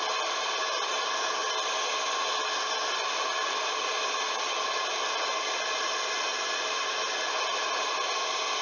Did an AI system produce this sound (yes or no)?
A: no